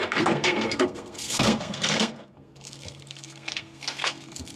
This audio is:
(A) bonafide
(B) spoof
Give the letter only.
B